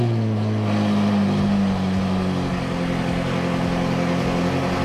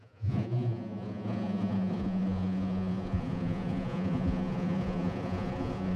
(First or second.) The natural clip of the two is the first